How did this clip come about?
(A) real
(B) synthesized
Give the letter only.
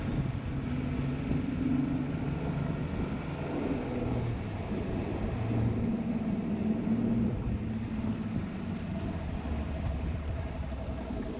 A